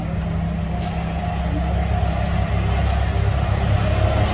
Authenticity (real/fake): real